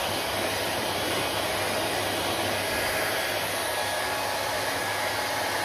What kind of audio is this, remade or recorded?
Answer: recorded